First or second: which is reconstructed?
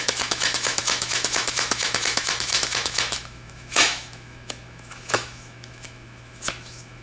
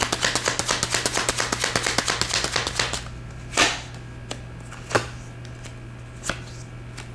first